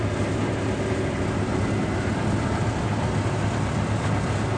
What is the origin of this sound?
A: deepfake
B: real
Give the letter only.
B